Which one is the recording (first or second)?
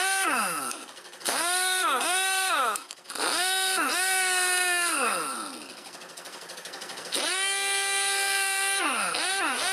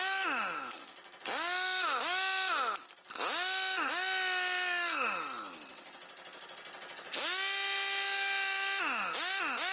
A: second